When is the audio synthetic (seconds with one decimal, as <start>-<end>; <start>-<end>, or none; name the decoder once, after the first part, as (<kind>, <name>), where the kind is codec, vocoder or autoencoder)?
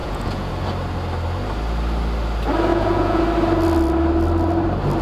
0.0-0.5 (vocoder, Vocos); 2.7-3.2